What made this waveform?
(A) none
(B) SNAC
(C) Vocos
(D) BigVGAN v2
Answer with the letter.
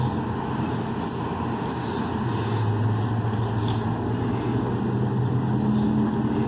A